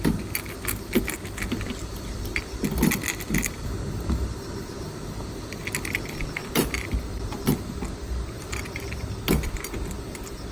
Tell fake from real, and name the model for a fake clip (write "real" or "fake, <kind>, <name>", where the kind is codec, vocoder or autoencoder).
real